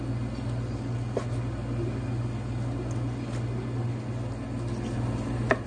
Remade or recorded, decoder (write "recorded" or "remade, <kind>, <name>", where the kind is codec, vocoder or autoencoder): recorded